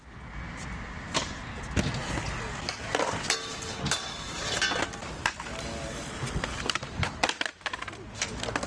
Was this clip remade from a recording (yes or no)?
no